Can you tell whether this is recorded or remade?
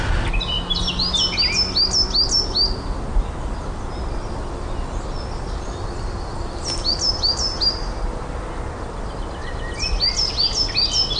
recorded